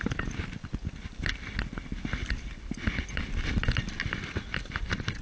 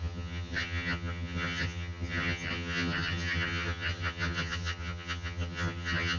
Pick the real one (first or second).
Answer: first